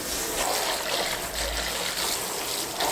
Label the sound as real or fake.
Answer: real